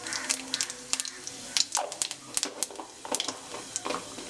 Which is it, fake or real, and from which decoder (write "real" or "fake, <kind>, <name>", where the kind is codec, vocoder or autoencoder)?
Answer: real